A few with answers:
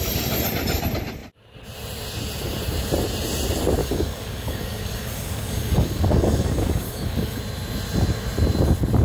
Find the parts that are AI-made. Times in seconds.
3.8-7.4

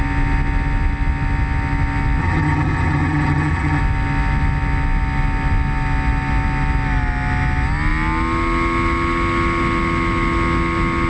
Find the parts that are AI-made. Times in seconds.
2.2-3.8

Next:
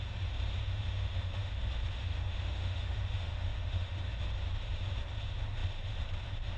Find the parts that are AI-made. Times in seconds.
0.6-1.5; 2.0-4.0